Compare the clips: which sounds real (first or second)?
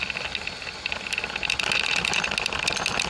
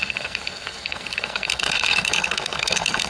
first